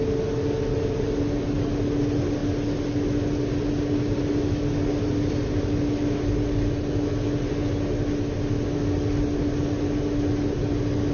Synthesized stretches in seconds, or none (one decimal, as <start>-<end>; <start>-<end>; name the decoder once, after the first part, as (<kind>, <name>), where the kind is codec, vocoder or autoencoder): none